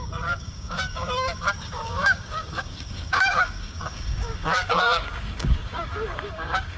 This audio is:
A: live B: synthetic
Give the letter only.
B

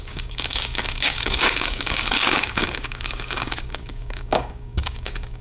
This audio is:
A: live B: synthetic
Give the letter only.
B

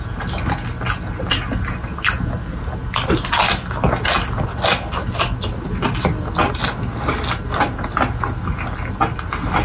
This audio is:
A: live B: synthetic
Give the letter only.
A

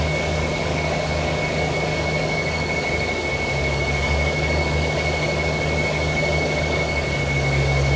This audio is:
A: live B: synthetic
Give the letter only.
B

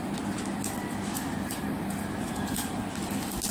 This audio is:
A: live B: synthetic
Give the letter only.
A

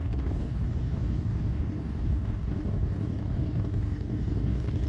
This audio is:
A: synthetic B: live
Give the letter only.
A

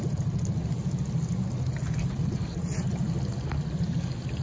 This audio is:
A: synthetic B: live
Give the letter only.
B